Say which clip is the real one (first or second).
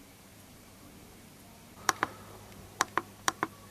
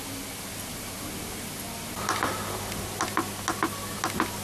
second